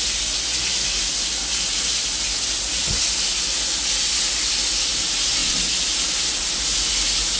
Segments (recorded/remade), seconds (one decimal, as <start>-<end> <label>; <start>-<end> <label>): 0.0-7.4 recorded